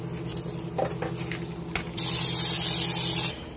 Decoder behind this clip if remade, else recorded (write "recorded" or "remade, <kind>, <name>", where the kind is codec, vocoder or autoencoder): recorded